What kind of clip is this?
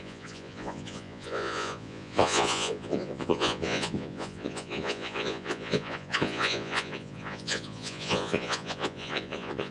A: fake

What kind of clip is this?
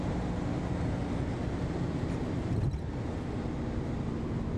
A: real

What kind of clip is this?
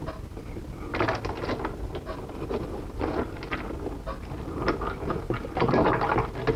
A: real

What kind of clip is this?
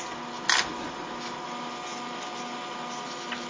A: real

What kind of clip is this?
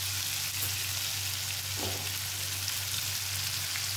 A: real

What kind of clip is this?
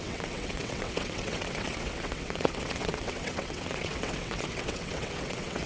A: fake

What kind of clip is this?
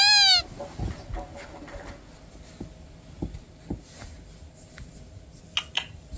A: real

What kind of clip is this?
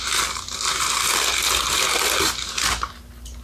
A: real